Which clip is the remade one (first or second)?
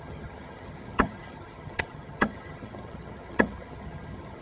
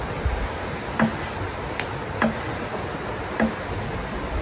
first